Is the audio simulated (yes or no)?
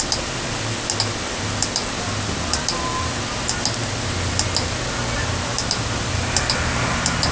no